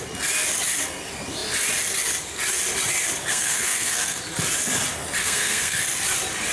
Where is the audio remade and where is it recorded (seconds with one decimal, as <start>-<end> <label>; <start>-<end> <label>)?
0.0-3.3 recorded; 3.3-4.2 remade; 4.2-5.2 recorded; 5.2-5.8 remade; 5.8-6.5 recorded